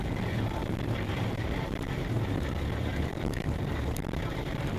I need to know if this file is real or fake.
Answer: fake